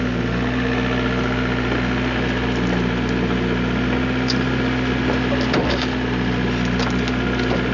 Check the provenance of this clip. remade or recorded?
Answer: recorded